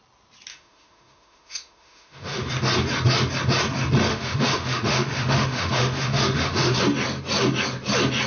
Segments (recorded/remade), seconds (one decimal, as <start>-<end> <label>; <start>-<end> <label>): 0.0-0.5 recorded; 0.5-2.5 remade; 2.5-4.1 recorded; 4.1-6.8 remade; 6.8-8.3 recorded